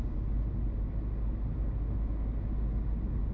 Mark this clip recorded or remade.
recorded